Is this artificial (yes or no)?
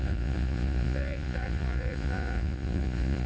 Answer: yes